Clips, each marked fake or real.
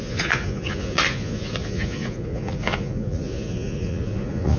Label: fake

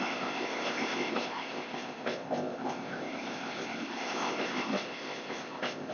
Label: fake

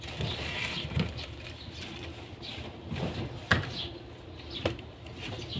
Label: real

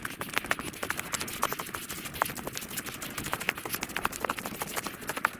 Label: real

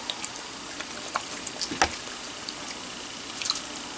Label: real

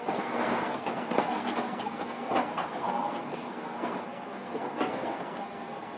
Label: fake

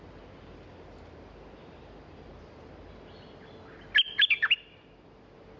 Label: real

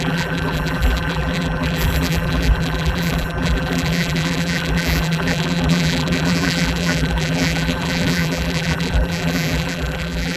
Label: fake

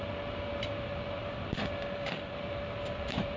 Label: fake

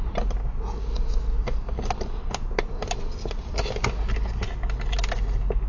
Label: real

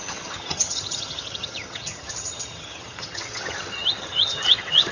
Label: fake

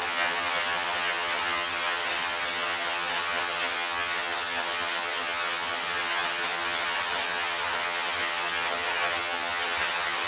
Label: fake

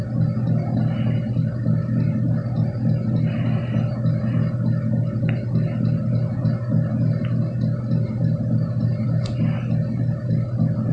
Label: real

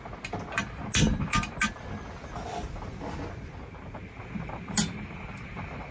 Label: real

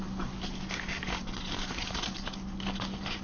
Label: real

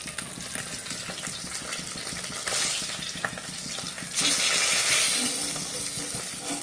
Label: real